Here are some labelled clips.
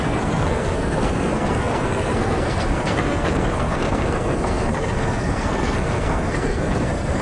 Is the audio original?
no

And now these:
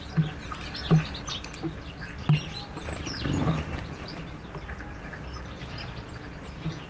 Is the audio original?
yes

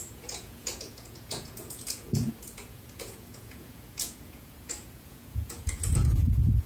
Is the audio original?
no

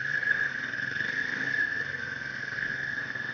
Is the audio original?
no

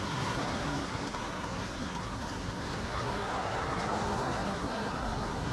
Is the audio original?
no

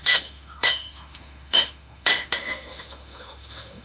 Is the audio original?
no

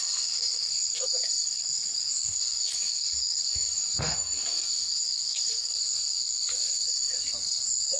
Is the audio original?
no